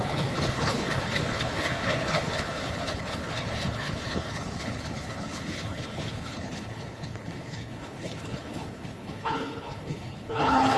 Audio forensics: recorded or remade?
remade